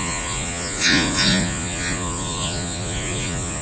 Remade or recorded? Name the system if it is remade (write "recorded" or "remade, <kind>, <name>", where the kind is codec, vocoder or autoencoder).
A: remade, vocoder, Vocos